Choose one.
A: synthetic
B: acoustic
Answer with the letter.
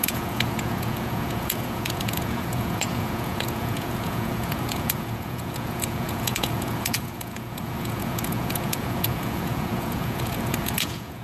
A